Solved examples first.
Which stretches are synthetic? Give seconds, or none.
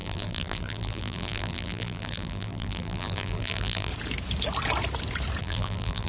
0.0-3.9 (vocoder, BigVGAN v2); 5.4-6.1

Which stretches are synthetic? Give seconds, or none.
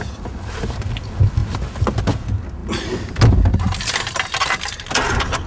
none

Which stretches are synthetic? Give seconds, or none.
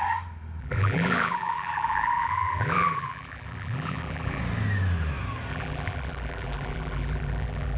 0.6-4.4 (vocoder, BigVGAN v2); 5.5-7.8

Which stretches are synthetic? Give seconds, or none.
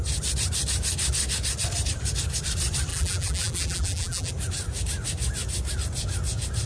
2.9-4.3 (vocoder, BigVGAN v2)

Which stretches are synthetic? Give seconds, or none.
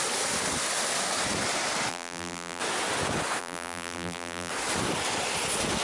1.9-2.6 (vocoder, BigVGAN v2); 3.4-4.5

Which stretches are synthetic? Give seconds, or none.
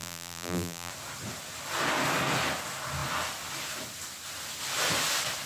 0.0-0.9 (vocoder, BigVGAN v2)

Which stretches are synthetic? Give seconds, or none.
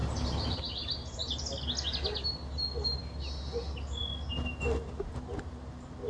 0.0-1.4 (vocoder, BigVGAN v2)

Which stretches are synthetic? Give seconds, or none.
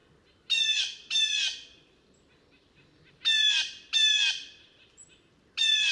0.8-5.9 (vocoder, BigVGAN v2)